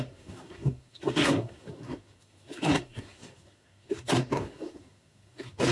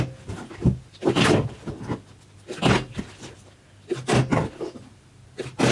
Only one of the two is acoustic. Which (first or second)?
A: second